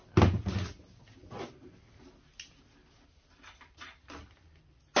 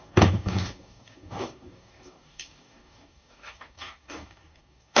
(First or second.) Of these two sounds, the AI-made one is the second